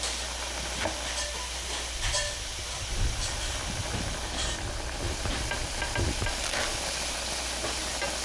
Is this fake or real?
real